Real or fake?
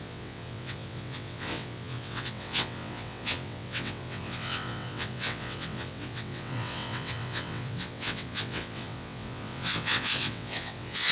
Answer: fake